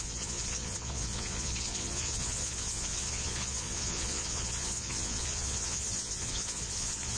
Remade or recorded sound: remade